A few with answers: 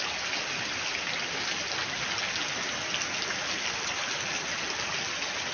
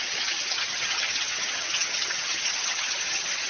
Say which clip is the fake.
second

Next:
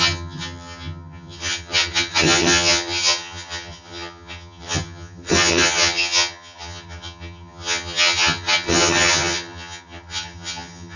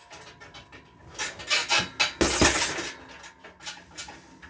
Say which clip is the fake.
first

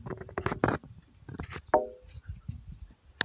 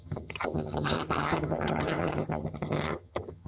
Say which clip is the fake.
second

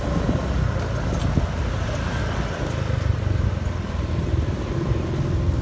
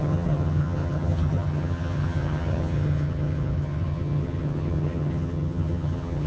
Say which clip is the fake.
second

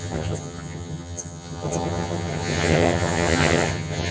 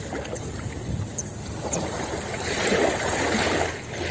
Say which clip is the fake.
first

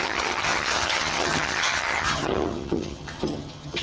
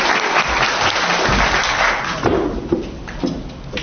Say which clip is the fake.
first